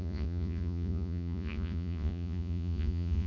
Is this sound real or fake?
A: fake